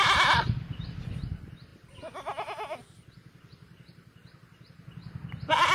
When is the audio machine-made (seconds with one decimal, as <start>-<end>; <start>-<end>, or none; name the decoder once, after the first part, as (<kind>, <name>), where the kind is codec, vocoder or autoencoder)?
none